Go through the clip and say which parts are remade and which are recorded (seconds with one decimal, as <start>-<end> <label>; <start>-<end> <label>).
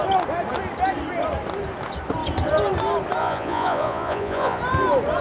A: 0.0-3.2 recorded; 3.2-4.6 remade; 4.6-5.2 recorded